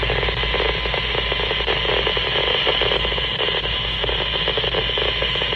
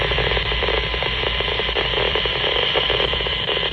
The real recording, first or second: first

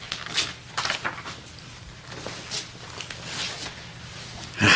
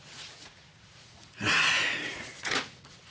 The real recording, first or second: first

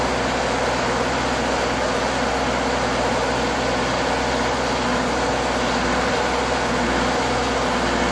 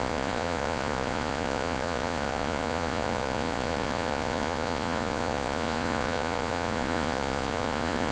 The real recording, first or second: first